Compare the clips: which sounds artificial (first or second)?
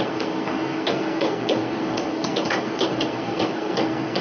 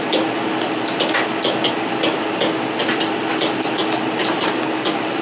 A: first